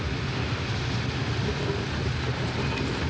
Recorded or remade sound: recorded